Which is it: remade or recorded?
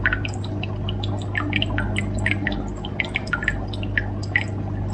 recorded